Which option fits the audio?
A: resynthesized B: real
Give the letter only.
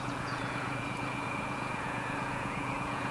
A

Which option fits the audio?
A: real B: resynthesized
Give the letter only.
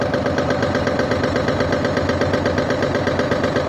A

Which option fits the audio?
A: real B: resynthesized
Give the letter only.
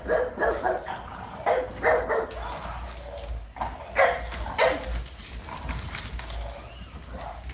A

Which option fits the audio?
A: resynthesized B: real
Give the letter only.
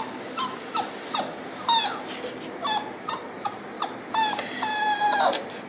B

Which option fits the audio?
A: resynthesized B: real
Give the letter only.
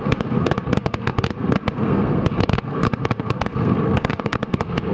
A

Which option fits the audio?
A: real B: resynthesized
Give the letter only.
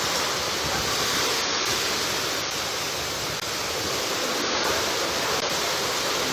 A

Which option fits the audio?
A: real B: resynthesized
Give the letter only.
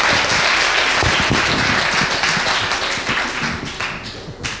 A